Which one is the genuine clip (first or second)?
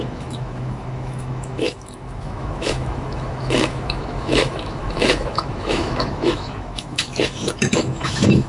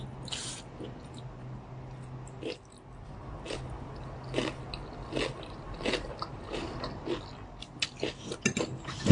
second